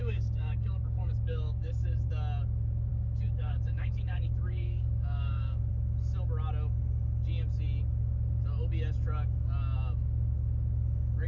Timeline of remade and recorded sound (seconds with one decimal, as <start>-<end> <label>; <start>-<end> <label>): 0.0-2.1 remade; 2.1-2.9 recorded; 2.9-5.7 remade; 5.7-11.3 recorded

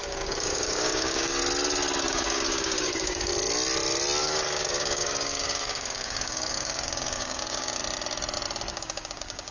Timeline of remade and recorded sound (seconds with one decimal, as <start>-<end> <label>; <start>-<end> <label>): 0.0-1.4 remade; 1.4-2.0 recorded; 2.0-3.3 remade; 3.3-4.2 recorded; 4.2-7.8 remade; 7.8-8.7 recorded; 8.7-9.5 remade

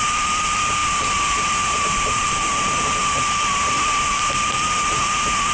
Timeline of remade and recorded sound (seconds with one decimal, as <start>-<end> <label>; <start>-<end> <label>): 0.0-5.5 recorded

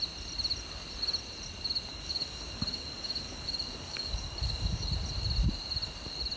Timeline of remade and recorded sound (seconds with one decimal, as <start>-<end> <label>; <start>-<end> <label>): 0.0-1.9 recorded; 1.9-4.9 remade; 4.9-6.4 recorded

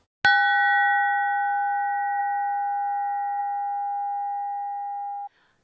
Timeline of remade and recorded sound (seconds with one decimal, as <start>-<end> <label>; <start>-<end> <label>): 0.0-5.6 recorded

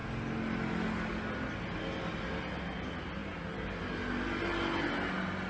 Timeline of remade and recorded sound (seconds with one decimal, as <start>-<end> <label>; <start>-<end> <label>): 0.0-5.5 recorded